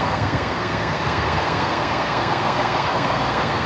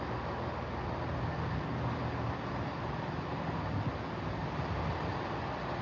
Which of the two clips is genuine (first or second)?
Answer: second